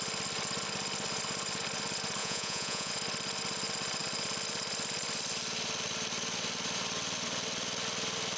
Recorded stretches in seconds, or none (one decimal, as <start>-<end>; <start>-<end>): 0.0-2.2; 2.9-8.4